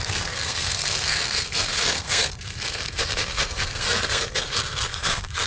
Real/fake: fake